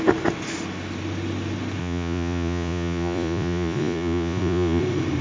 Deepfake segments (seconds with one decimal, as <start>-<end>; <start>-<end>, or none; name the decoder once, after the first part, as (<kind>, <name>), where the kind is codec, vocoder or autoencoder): 1.8-4.8 (vocoder, Vocos)